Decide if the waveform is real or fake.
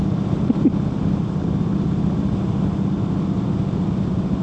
real